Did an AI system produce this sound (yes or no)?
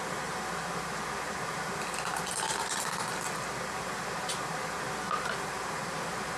no